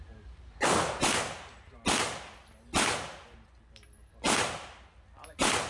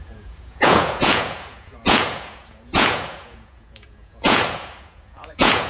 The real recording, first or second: first